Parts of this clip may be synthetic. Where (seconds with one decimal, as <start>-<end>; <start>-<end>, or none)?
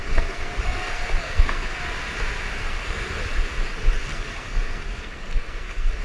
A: 0.0-1.8; 2.6-3.2; 4.1-6.0